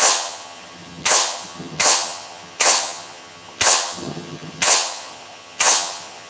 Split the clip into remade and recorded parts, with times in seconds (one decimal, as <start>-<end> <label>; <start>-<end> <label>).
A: 0.0-6.3 remade